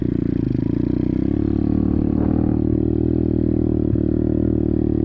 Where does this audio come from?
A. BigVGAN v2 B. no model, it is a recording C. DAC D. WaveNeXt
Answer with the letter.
B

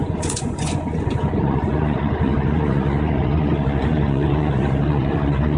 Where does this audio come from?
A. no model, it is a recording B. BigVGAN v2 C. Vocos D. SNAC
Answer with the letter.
C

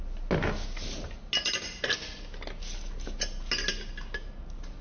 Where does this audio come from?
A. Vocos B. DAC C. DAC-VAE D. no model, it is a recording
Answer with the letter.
D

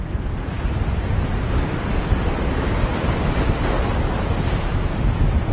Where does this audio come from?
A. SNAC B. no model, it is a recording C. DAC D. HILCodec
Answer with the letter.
B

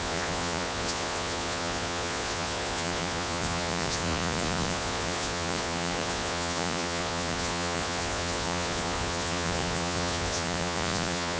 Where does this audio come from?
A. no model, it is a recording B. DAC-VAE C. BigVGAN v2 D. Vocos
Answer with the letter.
D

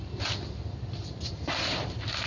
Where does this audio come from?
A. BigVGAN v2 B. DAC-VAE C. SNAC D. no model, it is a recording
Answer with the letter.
A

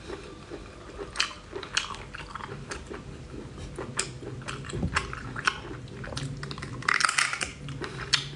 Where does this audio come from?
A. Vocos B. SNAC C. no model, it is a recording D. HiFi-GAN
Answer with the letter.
C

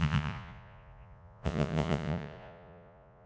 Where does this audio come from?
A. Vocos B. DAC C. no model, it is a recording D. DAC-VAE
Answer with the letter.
A